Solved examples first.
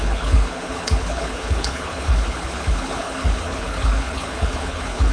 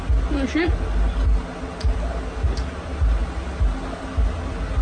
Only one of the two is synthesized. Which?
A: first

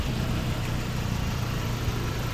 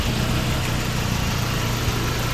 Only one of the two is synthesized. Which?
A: first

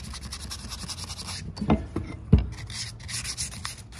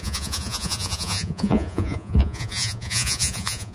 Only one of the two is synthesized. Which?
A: second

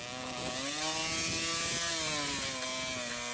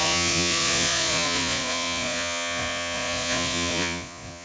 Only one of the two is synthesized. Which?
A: second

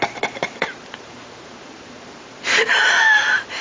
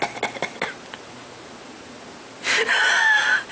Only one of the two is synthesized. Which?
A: first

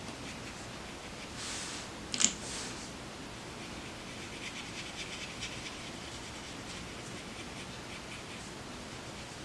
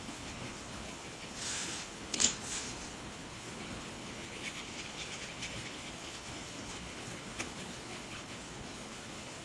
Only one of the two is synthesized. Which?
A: second